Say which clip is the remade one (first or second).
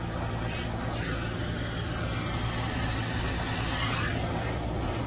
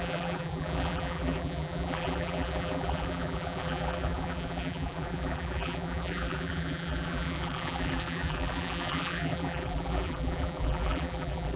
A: second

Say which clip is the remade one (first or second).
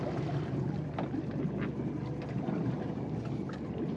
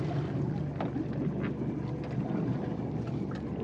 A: first